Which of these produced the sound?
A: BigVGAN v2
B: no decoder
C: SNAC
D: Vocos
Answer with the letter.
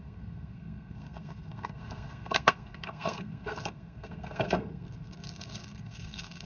C